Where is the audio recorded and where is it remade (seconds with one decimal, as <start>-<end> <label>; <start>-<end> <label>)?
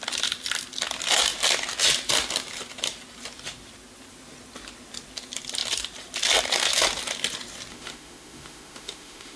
0.0-7.7 recorded; 7.7-9.4 remade